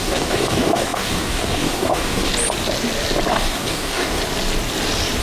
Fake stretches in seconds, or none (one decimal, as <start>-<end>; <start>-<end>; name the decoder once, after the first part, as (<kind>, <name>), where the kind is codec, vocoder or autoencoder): 0.0-2.3 (codec, DAC); 3.3-4.2